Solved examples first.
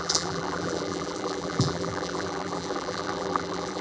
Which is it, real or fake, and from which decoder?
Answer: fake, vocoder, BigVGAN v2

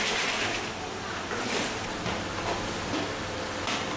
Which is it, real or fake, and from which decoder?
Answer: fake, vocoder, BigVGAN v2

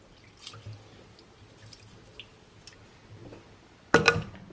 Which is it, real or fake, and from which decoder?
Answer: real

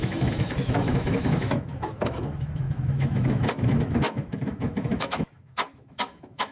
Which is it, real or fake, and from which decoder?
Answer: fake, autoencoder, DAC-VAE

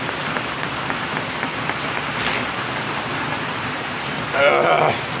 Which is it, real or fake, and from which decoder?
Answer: real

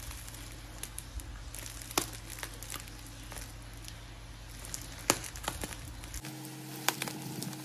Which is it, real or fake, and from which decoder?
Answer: real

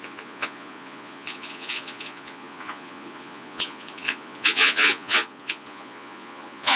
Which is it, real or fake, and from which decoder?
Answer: fake, vocoder, Vocos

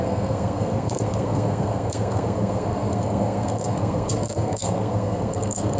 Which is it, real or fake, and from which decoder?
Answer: fake, codec, SNAC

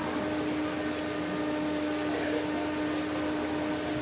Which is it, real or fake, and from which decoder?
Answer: real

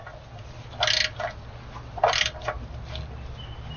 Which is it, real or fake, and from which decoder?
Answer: real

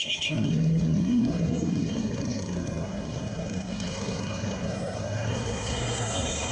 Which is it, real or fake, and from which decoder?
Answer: fake, codec, SNAC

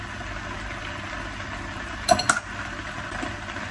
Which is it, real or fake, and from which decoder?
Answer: real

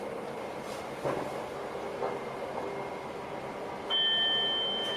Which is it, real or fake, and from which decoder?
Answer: real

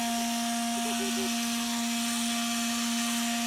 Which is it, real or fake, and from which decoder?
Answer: real